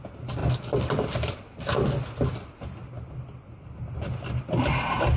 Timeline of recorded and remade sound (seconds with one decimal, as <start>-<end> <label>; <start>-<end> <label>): 0.0-5.2 recorded